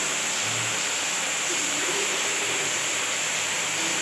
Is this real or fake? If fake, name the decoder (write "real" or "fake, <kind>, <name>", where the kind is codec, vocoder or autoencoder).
fake, vocoder, BigVGAN v2